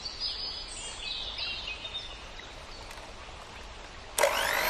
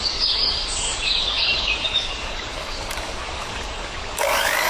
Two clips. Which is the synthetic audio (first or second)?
second